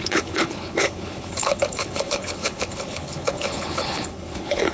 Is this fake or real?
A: fake